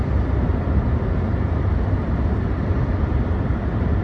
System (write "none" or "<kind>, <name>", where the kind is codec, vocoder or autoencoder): none